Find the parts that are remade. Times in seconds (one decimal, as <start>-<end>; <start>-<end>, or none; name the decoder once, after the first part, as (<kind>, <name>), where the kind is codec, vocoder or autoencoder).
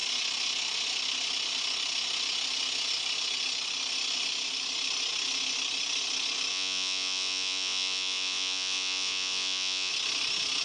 6.5-9.9 (vocoder, Vocos)